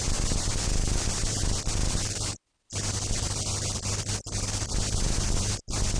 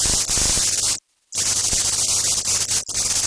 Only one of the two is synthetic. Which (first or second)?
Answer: first